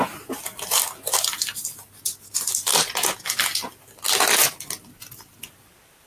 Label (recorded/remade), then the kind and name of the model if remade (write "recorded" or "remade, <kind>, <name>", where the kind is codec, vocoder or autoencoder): recorded